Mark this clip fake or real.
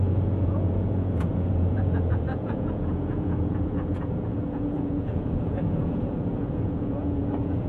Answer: fake